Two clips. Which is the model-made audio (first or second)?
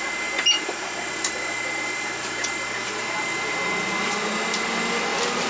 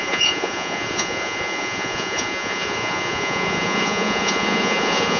second